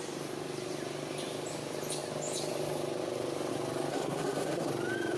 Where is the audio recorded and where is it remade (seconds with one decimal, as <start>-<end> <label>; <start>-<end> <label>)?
0.0-3.9 recorded; 3.9-4.7 remade; 4.7-5.2 recorded